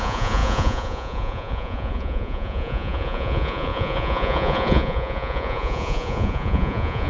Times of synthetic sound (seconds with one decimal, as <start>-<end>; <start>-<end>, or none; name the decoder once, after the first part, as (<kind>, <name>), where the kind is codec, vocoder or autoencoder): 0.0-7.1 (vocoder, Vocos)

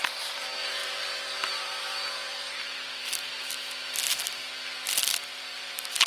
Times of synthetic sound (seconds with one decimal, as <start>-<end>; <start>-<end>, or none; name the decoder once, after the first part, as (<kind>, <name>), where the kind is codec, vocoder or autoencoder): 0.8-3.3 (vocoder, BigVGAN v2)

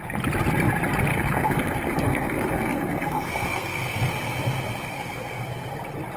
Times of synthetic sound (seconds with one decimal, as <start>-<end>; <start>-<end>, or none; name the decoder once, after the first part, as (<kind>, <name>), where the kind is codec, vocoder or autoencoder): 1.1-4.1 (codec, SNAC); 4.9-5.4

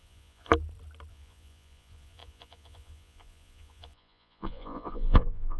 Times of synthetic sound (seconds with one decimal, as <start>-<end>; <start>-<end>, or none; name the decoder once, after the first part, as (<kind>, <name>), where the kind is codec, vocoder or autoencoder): 0.0-0.5 (vocoder, Vocos); 1.1-5.6

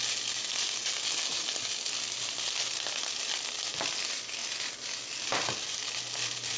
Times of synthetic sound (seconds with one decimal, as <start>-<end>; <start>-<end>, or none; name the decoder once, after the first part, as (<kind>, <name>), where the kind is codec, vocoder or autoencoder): none

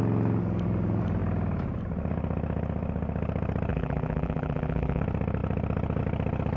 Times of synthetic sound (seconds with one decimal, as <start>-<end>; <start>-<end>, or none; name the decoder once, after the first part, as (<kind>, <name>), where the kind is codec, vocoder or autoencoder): 3.7-5.0 (vocoder, BigVGAN v2)

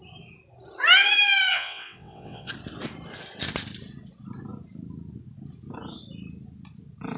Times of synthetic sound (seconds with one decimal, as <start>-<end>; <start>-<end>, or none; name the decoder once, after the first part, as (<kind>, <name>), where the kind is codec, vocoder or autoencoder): 1.5-2.5 (vocoder, WaveNeXt)

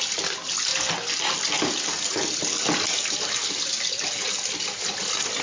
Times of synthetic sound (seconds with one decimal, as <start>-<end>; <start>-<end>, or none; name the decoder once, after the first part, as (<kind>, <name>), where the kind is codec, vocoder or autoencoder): none